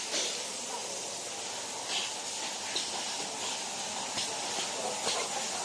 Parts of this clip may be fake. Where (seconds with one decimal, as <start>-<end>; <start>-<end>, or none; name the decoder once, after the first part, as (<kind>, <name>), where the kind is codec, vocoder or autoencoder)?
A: none